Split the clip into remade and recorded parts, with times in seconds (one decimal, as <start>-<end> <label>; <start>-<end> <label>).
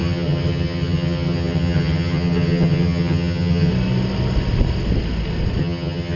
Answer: 0.0-3.7 remade; 3.7-5.6 recorded; 5.6-6.2 remade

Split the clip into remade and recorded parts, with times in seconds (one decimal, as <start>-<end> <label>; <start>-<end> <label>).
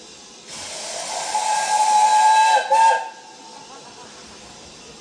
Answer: 0.0-5.0 recorded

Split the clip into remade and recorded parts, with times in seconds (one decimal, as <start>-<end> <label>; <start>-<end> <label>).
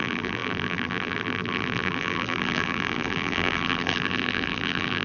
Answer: 0.0-5.0 remade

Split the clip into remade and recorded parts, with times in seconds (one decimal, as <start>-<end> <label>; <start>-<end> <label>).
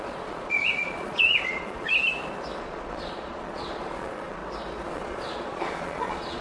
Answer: 0.0-1.9 remade; 1.9-2.6 recorded; 2.6-4.4 remade; 4.4-4.9 recorded; 4.9-6.4 remade